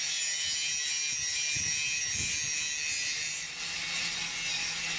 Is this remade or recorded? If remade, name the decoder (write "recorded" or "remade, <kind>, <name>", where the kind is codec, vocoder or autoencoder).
recorded